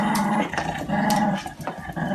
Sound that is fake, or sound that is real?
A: real